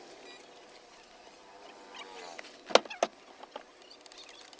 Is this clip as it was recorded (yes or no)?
yes